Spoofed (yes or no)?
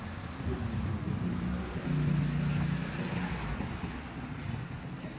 no